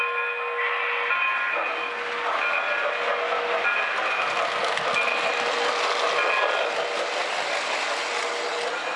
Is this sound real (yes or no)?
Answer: yes